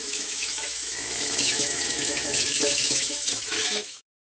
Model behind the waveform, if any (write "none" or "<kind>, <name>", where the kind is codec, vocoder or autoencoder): autoencoder, DAC-VAE